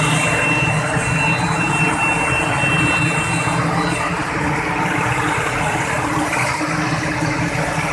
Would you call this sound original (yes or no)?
yes